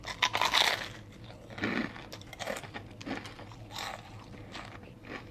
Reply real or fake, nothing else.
real